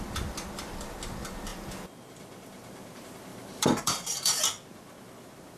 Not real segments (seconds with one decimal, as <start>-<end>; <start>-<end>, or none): 3.3-4.4